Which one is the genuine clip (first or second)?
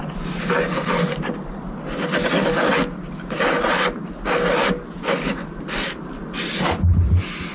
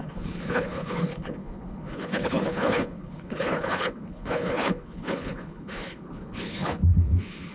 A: first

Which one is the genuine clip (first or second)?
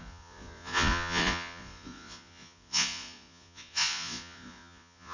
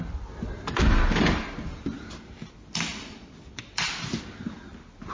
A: second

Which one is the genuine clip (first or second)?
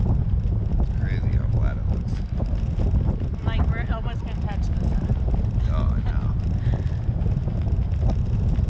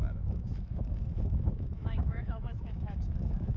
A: first